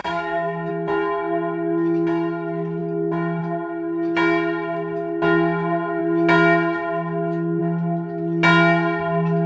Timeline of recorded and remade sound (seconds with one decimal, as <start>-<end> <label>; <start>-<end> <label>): 0.0-0.7 remade; 0.7-9.5 recorded